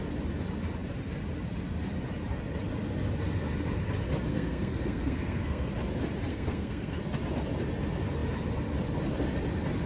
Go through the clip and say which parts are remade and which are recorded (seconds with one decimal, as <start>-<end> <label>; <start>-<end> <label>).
0.0-4.3 recorded; 4.3-5.7 remade; 5.7-6.3 recorded; 6.3-7.0 remade; 7.0-9.9 recorded